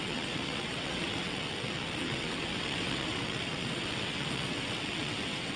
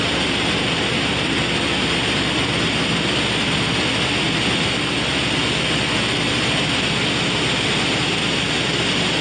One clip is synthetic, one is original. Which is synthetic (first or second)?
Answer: first